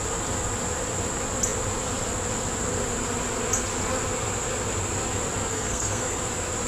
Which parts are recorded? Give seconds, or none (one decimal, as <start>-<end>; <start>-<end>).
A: 0.0-5.5; 6.2-6.7